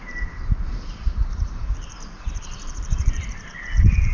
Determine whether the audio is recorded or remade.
remade